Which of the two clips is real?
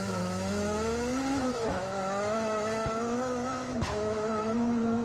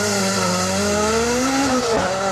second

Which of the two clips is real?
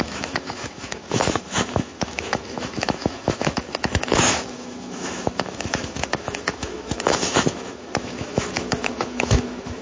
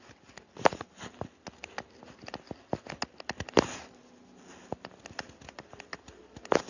second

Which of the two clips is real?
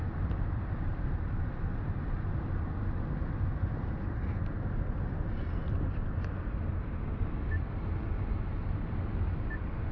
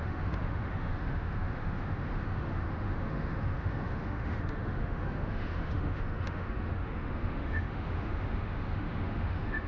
first